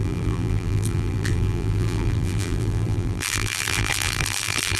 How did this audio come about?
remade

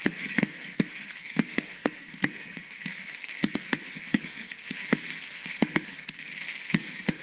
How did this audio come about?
remade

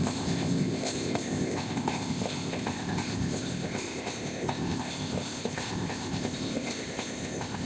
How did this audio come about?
remade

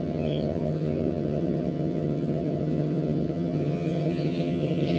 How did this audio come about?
remade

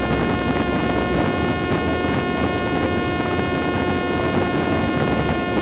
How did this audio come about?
recorded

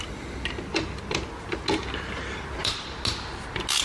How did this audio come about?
recorded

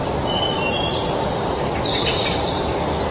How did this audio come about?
remade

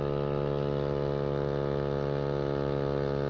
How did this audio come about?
recorded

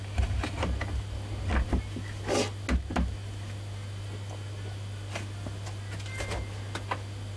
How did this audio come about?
recorded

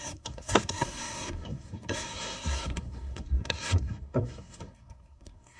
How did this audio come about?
remade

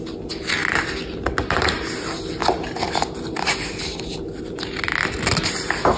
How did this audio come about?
recorded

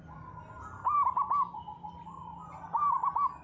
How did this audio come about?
recorded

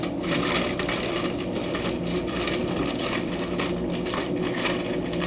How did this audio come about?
recorded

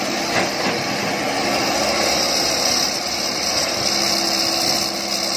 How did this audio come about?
recorded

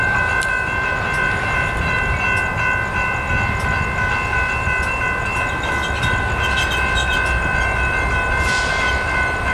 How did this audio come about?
recorded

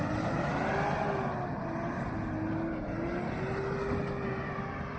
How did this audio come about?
recorded